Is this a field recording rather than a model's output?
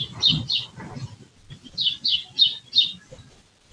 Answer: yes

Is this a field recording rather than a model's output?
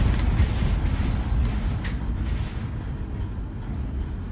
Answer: yes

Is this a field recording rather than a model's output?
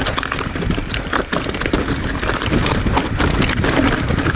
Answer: yes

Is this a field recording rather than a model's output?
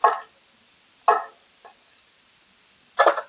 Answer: yes